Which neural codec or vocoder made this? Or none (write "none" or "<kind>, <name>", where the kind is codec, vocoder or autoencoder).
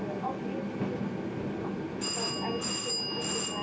none